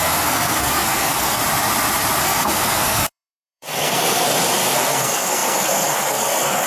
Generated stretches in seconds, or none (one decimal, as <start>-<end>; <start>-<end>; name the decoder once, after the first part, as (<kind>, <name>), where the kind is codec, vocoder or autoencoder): 0.0-1.4 (codec, SNAC); 2.2-6.7